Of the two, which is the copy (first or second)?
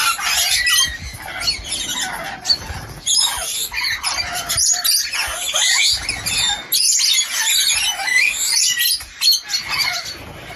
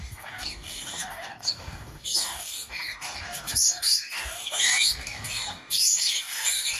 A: second